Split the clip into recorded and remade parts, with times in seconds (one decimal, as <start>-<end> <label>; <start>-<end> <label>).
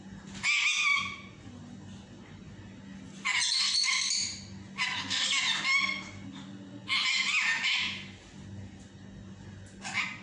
0.0-10.2 recorded